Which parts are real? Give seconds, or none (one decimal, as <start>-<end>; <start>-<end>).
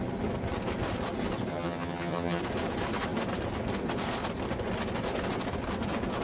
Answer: 0.0-1.5; 2.4-6.2